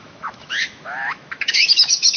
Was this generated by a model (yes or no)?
yes